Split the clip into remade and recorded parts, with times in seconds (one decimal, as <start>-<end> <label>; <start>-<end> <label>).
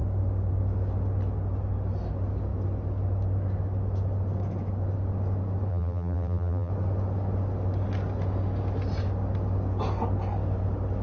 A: 0.0-5.7 recorded; 5.7-6.7 remade; 6.7-11.0 recorded